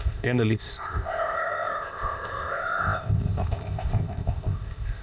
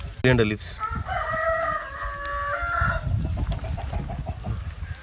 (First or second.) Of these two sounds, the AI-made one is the first